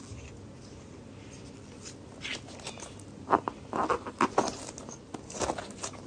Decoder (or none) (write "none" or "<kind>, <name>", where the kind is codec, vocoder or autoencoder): none